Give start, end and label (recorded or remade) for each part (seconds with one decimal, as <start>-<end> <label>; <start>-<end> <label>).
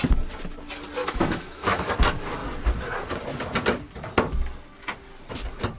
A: 0.0-1.0 recorded; 1.0-1.9 remade; 1.9-5.8 recorded